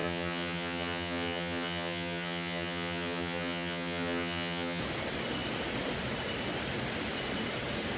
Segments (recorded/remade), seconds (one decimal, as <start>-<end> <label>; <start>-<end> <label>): 0.0-4.8 remade; 4.8-8.0 recorded

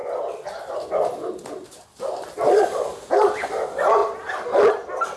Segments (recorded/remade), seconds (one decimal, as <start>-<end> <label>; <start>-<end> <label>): 0.0-5.2 recorded

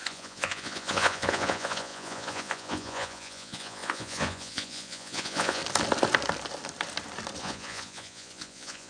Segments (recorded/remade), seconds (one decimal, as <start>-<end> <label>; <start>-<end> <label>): 0.0-5.6 remade; 5.6-7.4 recorded; 7.4-8.9 remade